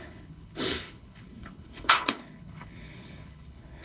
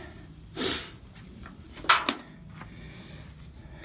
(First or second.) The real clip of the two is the second